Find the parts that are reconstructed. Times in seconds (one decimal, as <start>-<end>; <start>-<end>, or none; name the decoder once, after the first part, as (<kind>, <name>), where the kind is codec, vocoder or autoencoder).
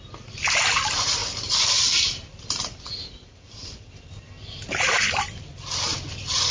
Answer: 0.0-6.5 (vocoder, BigVGAN v2)